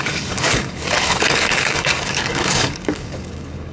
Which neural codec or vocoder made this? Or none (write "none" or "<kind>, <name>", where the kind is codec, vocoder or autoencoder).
codec, DAC